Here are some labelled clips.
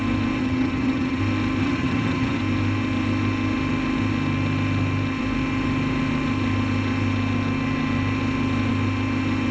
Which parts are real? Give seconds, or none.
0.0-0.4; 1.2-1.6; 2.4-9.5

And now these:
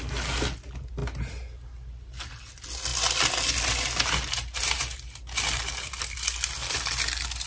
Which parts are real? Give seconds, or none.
0.0-7.5

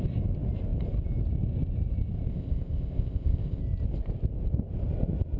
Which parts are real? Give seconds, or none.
0.0-2.3; 3.6-5.4